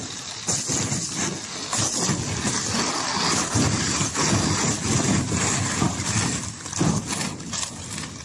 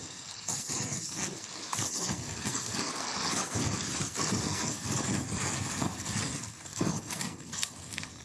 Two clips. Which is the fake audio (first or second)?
second